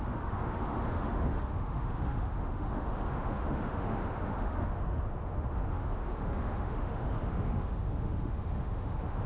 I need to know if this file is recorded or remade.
remade